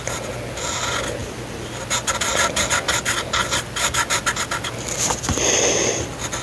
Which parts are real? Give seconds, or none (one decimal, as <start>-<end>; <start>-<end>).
0.0-6.4